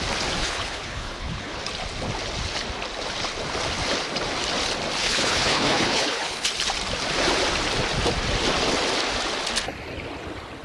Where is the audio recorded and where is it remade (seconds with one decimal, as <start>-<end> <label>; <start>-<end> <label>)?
0.0-0.4 recorded; 0.4-1.6 remade; 1.6-5.0 recorded; 5.0-6.5 remade; 6.5-10.6 recorded